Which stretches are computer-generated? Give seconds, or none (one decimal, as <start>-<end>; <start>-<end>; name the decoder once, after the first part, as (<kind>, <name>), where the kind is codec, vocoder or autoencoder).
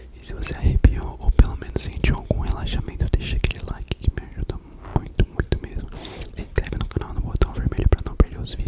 none